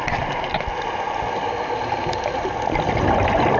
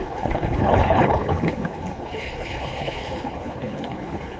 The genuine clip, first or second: first